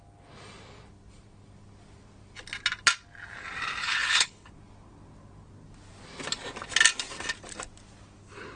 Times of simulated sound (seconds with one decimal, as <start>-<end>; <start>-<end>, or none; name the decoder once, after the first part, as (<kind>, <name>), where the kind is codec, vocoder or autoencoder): 3.8-4.5 (codec, HILCodec)